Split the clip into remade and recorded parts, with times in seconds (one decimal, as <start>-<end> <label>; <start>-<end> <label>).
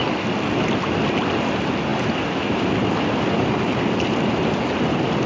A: 0.0-5.3 recorded